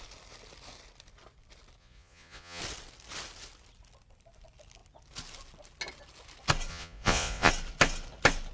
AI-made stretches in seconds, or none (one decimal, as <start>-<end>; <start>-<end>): 1.8-2.6; 6.7-7.5